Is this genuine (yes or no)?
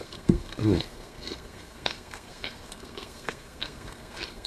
no